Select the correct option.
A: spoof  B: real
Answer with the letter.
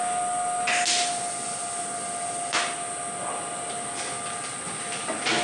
B